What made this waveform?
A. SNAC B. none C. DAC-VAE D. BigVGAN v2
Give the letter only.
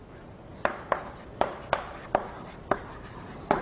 D